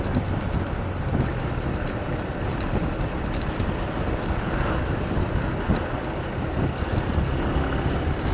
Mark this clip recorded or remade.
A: recorded